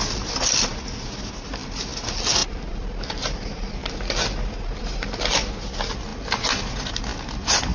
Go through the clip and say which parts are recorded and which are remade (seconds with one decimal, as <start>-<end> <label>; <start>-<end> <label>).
0.0-7.7 recorded

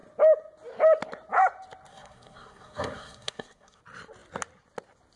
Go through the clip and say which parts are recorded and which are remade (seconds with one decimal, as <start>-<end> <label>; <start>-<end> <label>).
0.0-1.9 recorded; 1.9-3.8 remade; 3.8-5.2 recorded

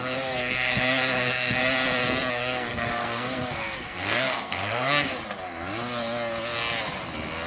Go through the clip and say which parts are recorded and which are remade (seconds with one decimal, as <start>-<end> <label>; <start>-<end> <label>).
0.0-1.6 remade; 1.6-2.3 recorded; 2.3-5.1 remade; 5.1-7.5 recorded